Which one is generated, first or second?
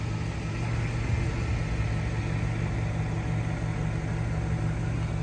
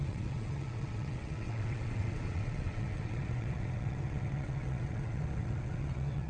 second